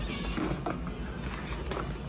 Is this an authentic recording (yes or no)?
yes